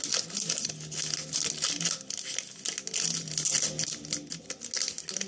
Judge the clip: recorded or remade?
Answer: recorded